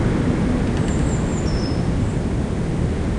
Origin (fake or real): real